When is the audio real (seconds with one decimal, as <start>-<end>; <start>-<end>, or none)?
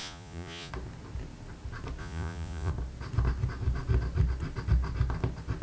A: 0.7-2.0; 2.7-5.6